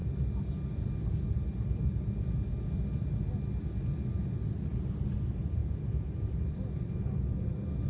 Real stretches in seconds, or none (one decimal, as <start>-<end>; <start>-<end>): 0.0-7.9